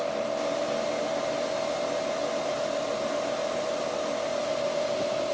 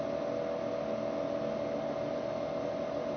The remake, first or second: first